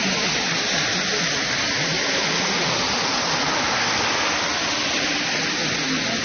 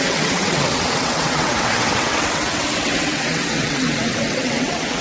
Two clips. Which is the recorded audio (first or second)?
first